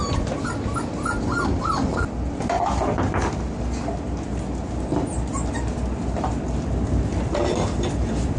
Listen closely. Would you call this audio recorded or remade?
recorded